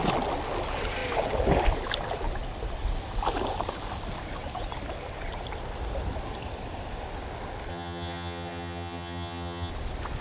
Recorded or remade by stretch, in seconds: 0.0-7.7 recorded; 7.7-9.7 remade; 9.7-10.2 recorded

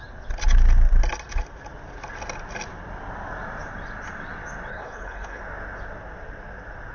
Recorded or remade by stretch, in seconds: 0.0-4.7 recorded; 4.7-5.4 remade; 5.4-6.9 recorded

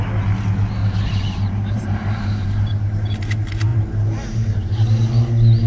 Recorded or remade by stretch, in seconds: 0.0-0.8 recorded; 0.8-2.7 remade; 2.7-3.7 recorded; 3.7-5.1 remade; 5.1-5.7 recorded